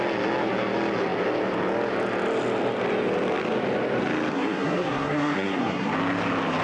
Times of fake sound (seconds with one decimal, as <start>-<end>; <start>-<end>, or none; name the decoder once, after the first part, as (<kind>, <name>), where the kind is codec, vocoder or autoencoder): 4.3-5.9 (codec, SNAC)